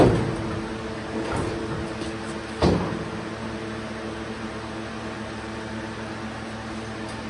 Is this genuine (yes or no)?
yes